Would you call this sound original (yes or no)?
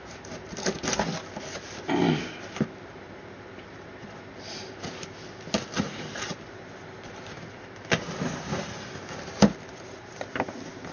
yes